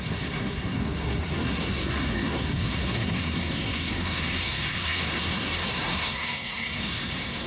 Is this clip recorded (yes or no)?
no